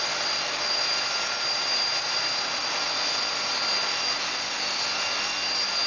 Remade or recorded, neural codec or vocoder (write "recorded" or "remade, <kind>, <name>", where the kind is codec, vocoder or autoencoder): recorded